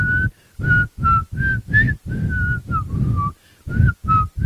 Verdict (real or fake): real